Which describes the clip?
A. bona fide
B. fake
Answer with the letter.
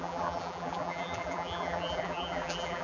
B